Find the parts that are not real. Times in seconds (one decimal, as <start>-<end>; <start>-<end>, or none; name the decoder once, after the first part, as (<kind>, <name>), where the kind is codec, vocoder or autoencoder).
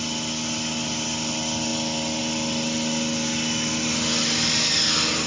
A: none